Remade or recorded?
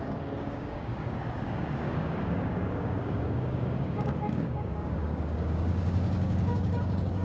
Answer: remade